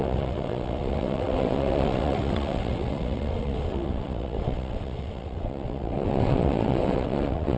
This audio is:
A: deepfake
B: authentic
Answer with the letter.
A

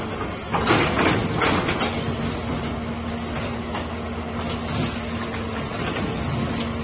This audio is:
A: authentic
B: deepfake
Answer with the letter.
A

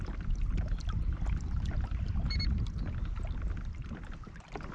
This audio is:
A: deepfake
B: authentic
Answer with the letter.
B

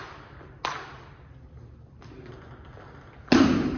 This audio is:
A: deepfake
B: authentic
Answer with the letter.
B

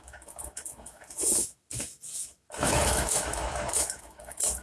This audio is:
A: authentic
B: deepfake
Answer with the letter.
B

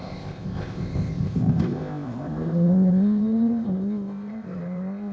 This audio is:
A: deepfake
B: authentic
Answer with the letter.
A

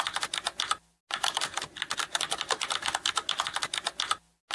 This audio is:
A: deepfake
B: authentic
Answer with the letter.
B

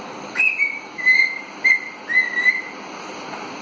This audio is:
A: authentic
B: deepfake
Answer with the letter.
A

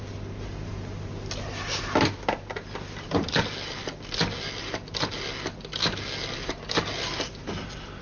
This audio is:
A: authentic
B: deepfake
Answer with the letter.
A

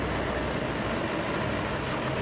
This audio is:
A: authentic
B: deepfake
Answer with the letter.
A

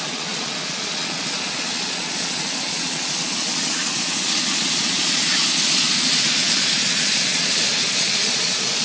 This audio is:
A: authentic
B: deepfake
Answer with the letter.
B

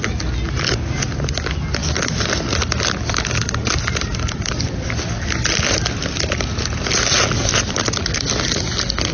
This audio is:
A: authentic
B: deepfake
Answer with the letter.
A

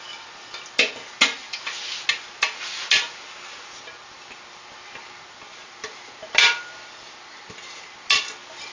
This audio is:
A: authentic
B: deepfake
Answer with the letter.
A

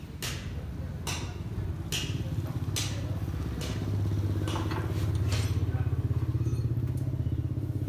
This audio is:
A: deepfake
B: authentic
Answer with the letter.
B